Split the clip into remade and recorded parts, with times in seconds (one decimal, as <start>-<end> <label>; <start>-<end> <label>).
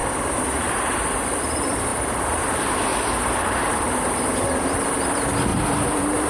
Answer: 0.0-1.4 remade; 1.4-1.9 recorded; 1.9-2.4 remade; 2.4-2.9 recorded; 2.9-3.9 remade; 3.9-5.5 recorded; 5.5-6.3 remade